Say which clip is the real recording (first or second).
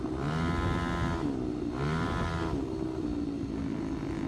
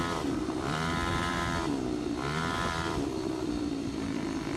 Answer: first